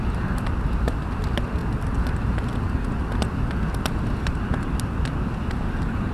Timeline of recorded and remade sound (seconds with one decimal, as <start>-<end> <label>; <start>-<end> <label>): 0.0-6.1 recorded

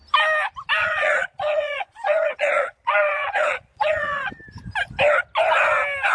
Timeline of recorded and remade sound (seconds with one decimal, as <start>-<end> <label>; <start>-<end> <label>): 0.0-0.8 recorded; 0.8-4.3 remade; 4.3-6.1 recorded

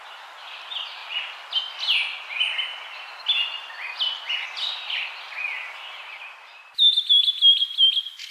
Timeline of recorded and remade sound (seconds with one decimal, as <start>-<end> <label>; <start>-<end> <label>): 0.0-8.3 recorded

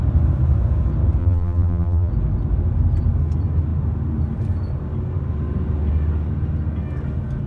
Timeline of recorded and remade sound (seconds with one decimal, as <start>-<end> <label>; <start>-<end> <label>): 0.0-1.2 recorded; 1.2-2.1 remade; 2.1-7.5 recorded

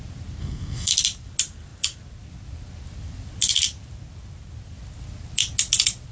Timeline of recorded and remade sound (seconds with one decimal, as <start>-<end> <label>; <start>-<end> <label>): 0.0-0.4 recorded; 0.4-0.9 remade; 0.9-6.1 recorded

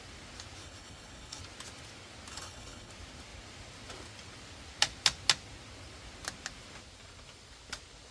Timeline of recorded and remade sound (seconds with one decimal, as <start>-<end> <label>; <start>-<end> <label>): 0.0-0.6 recorded; 0.6-1.4 remade; 1.4-2.3 recorded; 2.3-2.9 remade; 2.9-8.1 recorded

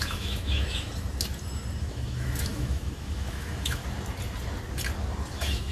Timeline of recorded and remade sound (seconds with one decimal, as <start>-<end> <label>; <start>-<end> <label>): 0.0-0.9 remade; 0.9-1.8 recorded; 1.8-3.8 remade; 3.8-5.3 recorded; 5.3-5.7 remade

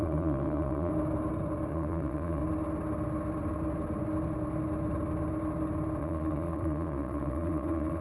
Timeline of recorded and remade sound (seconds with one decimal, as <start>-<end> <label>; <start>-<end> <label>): 0.0-0.9 remade; 0.9-1.7 recorded; 1.7-2.4 remade; 2.4-6.0 recorded; 6.0-8.0 remade